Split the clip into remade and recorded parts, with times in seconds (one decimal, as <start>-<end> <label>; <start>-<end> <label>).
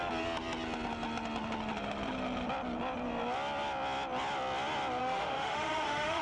0.0-5.0 recorded; 5.0-6.2 remade